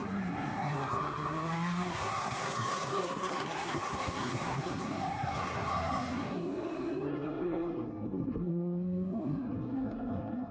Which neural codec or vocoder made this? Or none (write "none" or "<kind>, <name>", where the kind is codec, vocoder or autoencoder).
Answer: codec, SNAC